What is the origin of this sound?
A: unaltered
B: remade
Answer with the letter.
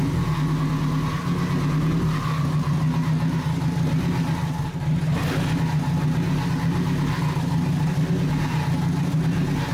A